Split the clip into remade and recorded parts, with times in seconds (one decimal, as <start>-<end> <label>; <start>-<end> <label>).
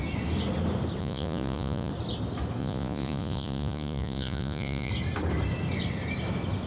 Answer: 0.0-1.0 recorded; 1.0-1.9 remade; 1.9-2.6 recorded; 2.6-4.9 remade; 4.9-6.7 recorded